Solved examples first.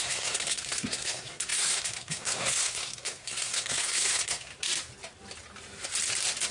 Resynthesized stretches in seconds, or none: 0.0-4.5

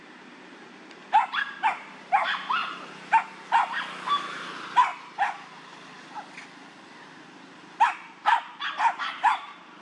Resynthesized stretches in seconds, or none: 0.0-4.9; 7.0-9.8

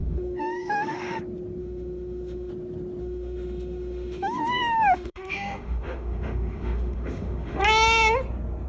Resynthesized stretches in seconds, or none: 0.0-1.2; 1.6-2.5; 3.0-7.6

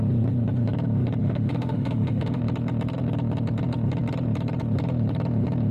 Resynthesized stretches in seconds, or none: 1.2-2.4

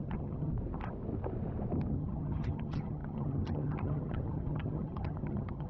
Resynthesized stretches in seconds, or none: 0.0-0.5; 1.9-5.7

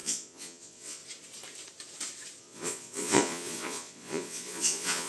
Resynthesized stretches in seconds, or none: 0.0-1.0; 2.4-5.1

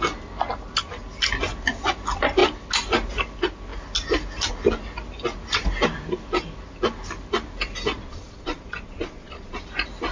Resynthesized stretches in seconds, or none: 7.9-9.6